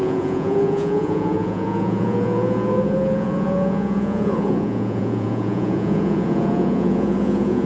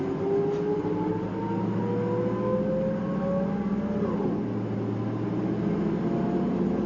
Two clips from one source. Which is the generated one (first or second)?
first